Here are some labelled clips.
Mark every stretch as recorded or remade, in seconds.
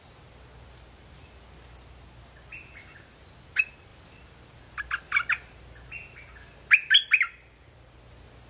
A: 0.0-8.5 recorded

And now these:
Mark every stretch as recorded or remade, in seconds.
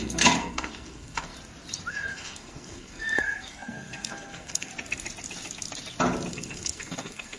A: 0.0-1.3 remade; 1.3-1.9 recorded; 1.9-4.7 remade; 4.7-6.3 recorded; 6.3-7.4 remade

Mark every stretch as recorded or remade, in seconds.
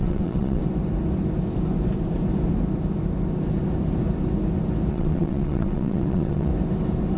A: 0.0-0.6 remade; 0.6-4.9 recorded; 4.9-6.5 remade; 6.5-7.2 recorded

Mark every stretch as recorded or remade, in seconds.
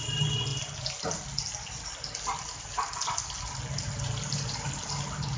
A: 0.0-5.4 recorded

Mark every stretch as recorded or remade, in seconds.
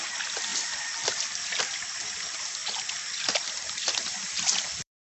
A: 0.0-2.6 remade; 2.6-3.1 recorded; 3.1-5.0 remade